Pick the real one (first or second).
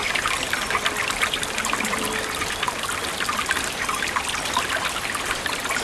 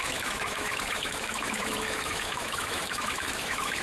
first